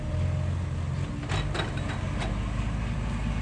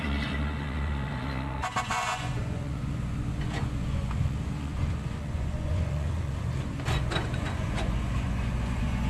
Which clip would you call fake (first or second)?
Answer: second